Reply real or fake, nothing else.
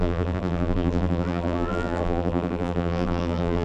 fake